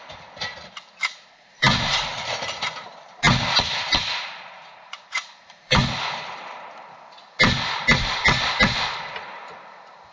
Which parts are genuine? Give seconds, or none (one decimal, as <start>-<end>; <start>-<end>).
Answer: 2.1-3.7; 5.8-10.1